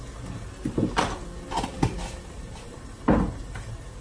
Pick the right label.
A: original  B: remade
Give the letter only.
A